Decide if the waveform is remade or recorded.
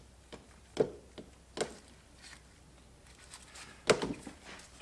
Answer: recorded